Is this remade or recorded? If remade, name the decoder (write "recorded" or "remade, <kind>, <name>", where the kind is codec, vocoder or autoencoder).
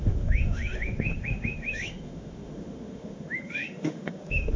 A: remade, autoencoder, DAC-VAE